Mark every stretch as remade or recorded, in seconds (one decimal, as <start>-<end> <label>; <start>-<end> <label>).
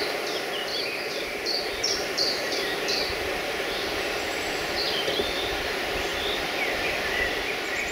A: 0.0-0.7 recorded; 0.7-5.4 remade; 5.4-7.9 recorded